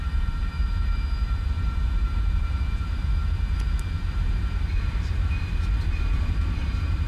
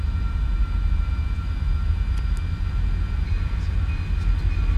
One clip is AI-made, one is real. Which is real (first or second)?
second